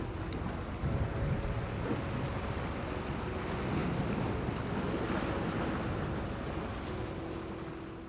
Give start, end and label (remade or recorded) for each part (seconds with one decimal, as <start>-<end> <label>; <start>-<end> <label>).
0.0-8.1 recorded